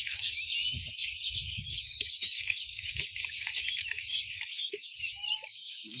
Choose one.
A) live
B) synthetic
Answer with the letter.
B